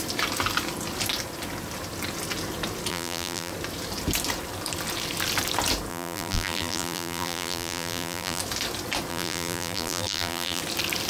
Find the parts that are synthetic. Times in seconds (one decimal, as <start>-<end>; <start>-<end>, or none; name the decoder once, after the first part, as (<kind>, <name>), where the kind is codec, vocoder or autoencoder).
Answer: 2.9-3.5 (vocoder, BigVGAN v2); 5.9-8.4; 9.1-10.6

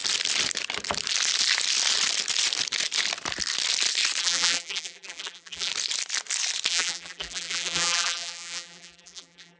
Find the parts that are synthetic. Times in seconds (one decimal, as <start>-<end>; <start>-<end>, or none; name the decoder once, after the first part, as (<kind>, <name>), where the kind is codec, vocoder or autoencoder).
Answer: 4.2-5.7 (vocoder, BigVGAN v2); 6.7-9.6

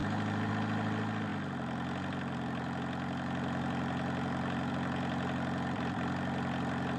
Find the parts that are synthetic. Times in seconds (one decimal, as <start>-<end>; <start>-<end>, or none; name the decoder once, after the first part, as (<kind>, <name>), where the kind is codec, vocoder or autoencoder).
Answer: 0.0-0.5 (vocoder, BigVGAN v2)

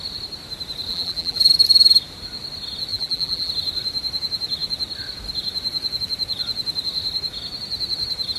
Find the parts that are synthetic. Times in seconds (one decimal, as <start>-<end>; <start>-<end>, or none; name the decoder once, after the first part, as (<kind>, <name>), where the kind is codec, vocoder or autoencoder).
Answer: 0.9-1.5 (vocoder, BigVGAN v2); 2.9-3.5

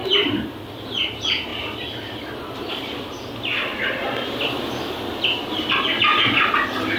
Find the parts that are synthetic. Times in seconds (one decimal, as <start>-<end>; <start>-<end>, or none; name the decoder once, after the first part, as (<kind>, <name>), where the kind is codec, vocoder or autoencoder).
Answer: 0.0-1.1 (vocoder, BigVGAN v2)

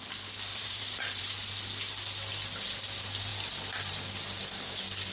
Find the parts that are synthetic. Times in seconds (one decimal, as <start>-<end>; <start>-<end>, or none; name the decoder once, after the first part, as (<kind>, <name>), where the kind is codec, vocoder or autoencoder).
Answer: 0.5-1.5 (vocoder, BigVGAN v2)